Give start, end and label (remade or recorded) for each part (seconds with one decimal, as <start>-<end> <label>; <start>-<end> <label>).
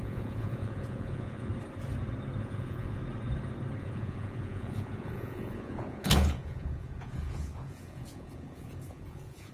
0.0-1.5 remade; 1.5-2.4 recorded; 2.4-3.0 remade; 3.0-3.8 recorded; 3.8-9.5 remade